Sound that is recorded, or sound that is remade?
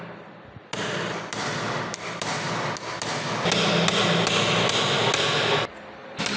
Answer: recorded